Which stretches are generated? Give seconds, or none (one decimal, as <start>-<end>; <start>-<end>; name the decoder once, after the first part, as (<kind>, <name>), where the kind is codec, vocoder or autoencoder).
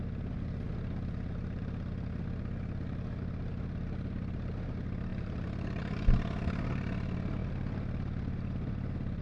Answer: 5.1-5.8 (vocoder, BigVGAN v2); 7.4-9.2